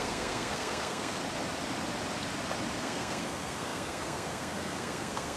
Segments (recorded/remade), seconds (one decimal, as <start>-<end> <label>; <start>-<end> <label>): 0.0-1.2 remade; 1.2-2.8 recorded; 2.8-5.4 remade